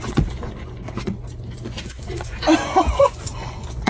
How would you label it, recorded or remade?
remade